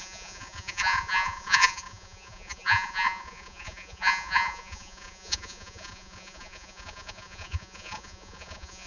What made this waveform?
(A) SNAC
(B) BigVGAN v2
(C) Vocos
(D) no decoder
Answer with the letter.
C